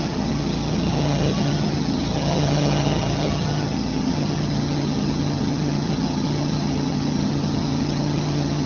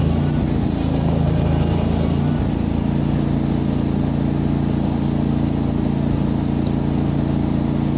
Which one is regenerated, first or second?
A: first